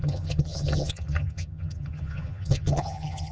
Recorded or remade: remade